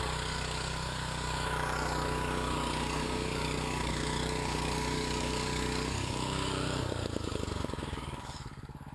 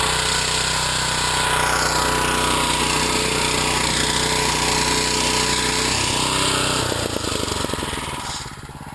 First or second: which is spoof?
first